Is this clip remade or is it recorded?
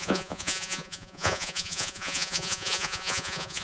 remade